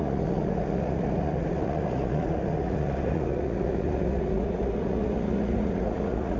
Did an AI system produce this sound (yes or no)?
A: yes